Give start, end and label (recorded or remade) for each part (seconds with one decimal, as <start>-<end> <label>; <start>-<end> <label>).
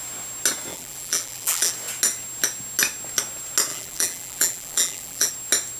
0.0-0.7 recorded; 0.7-1.7 remade; 1.7-3.7 recorded; 3.7-5.3 remade; 5.3-5.8 recorded